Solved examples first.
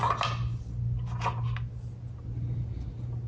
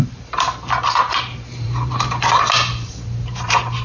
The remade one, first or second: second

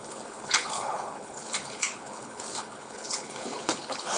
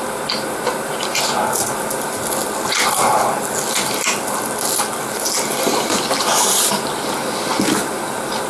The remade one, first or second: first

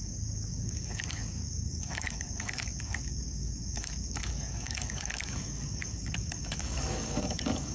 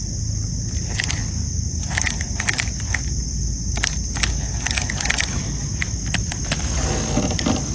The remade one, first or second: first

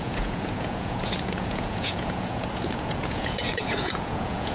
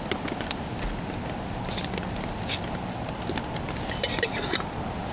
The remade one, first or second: first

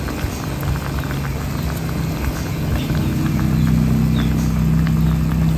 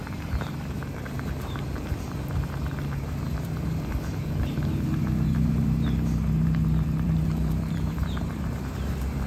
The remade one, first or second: second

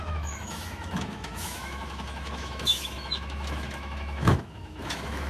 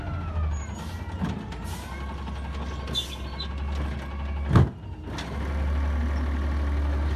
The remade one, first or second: first